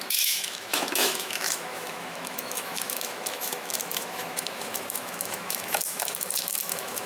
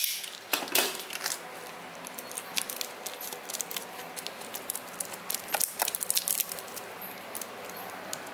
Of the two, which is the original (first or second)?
second